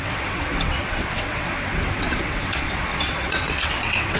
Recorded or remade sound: remade